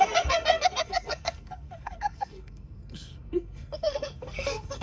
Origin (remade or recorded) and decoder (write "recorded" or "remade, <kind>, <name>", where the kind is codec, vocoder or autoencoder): remade, codec, SNAC